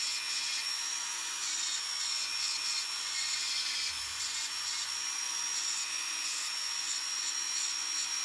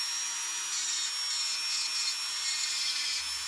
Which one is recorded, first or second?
second